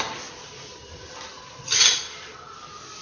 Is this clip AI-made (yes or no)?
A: no